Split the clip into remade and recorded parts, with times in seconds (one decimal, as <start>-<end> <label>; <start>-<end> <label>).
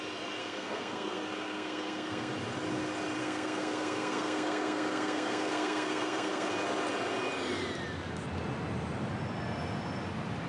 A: 0.0-0.4 recorded; 0.4-2.3 remade; 2.3-3.2 recorded; 3.2-6.5 remade; 6.5-10.5 recorded